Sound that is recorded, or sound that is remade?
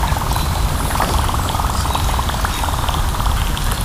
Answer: recorded